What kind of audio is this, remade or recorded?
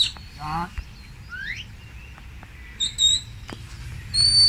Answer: recorded